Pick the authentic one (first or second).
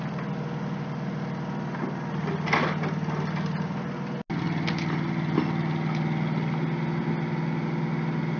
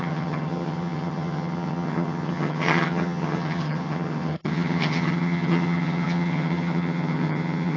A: first